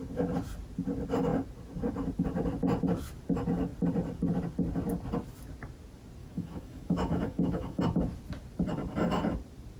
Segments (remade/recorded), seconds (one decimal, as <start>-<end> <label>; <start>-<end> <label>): 0.0-6.2 recorded; 6.2-7.8 remade; 7.8-9.8 recorded